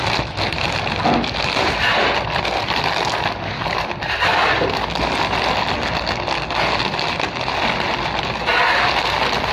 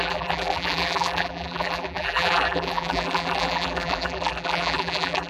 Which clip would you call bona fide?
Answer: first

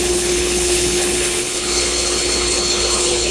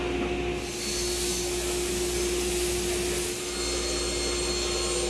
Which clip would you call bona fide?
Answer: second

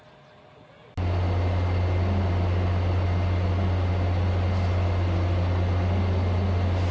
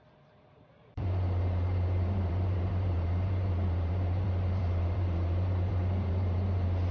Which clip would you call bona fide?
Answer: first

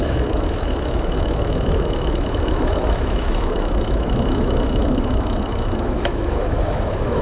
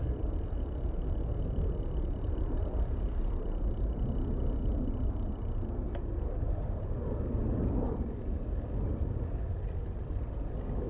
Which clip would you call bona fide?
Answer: second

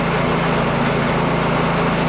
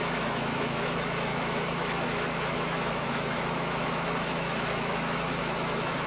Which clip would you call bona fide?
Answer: first